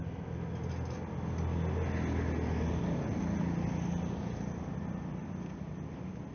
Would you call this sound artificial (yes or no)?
no